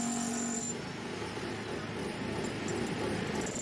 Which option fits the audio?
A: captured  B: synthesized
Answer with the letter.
A